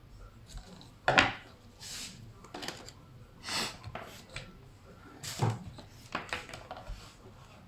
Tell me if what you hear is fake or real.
real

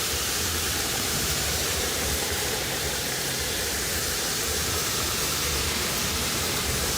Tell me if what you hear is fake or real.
fake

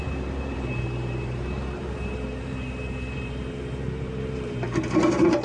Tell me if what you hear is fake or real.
fake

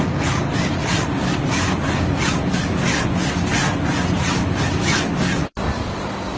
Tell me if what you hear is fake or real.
real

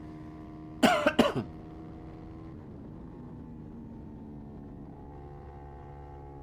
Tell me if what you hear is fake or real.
real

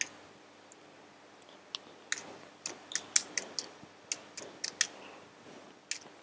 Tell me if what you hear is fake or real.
real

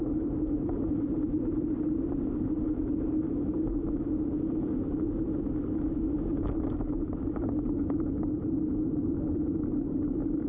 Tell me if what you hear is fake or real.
fake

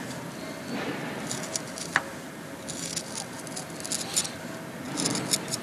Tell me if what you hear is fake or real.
real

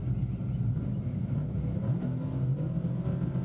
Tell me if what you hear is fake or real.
real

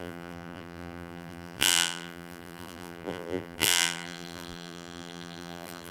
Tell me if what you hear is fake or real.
fake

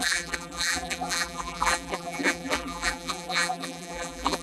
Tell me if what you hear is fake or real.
fake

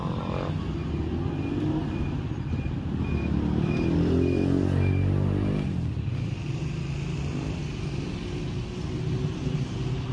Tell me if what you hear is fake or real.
real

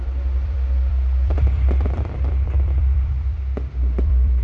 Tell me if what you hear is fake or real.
fake